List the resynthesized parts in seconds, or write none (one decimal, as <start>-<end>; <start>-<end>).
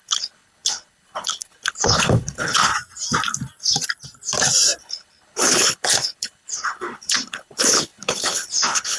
0.0-2.7; 4.8-9.0